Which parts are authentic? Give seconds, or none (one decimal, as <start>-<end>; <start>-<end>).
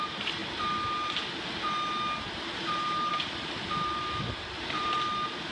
0.0-5.5